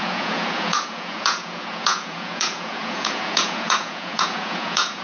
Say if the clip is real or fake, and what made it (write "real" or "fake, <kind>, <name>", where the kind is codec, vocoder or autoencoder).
fake, vocoder, Vocos